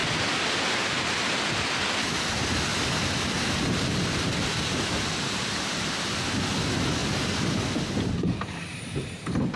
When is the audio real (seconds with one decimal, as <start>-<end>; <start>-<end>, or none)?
0.6-2.7; 4.9-9.6